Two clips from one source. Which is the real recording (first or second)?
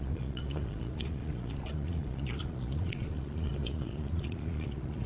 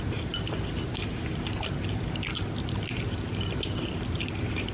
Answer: second